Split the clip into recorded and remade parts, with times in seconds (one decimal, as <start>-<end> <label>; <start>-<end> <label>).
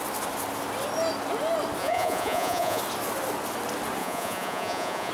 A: 0.0-1.8 recorded; 1.8-2.8 remade; 2.8-4.0 recorded; 4.0-5.1 remade